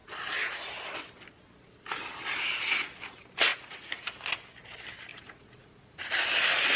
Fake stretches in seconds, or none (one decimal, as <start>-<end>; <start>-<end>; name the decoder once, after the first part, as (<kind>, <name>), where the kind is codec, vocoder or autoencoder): 3.5-4.1 (vocoder, Vocos); 5.1-6.1